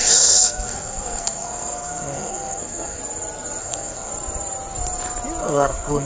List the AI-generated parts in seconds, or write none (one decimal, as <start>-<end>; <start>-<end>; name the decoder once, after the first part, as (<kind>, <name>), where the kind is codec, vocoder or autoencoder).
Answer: 0.0-3.0 (codec, SNAC); 3.6-4.1; 5.4-6.1

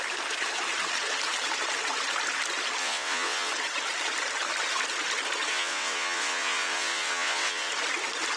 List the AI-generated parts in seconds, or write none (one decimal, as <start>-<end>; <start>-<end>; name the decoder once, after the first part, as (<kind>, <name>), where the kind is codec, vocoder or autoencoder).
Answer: 2.8-3.5 (vocoder, WaveNeXt); 5.5-7.7

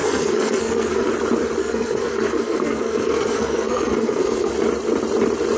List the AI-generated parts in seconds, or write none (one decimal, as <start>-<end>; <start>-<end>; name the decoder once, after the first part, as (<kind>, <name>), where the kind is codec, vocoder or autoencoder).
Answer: 0.0-1.1 (codec, SNAC); 1.6-4.5

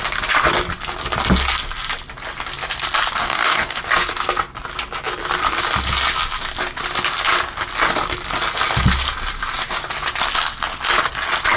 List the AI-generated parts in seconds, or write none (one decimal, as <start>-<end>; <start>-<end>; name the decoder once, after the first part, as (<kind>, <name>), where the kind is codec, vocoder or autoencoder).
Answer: 3.2-3.8 (codec, DAC)

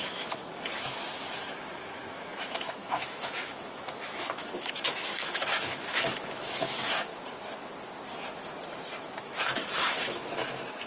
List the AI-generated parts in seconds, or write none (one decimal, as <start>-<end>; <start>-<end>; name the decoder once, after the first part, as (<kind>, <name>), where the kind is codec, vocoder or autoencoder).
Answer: 0.0-7.1 (autoencoder, DAC-VAE); 9.2-10.9

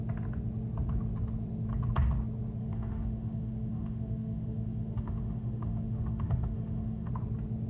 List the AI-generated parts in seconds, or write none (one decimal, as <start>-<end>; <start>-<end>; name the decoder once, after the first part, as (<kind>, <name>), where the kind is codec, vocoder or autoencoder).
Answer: 2.6-7.1 (autoencoder, DAC-VAE)

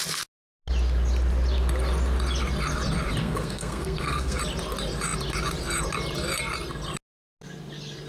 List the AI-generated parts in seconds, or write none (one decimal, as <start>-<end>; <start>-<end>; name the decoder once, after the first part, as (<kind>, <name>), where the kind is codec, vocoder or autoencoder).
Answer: 3.2-4.4 (codec, SNAC)

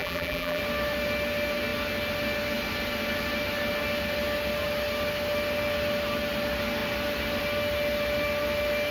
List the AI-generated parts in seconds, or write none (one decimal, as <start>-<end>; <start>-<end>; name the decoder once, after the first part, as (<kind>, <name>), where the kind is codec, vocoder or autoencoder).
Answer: 0.0-0.6 (vocoder, BigVGAN v2)